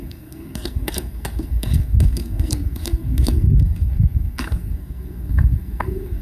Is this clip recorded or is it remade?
remade